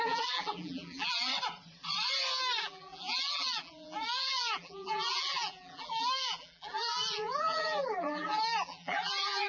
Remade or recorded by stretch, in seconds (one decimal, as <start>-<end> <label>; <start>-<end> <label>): 0.0-1.3 remade; 1.3-2.6 recorded; 2.6-9.5 remade